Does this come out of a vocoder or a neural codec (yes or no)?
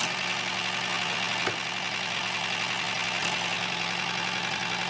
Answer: no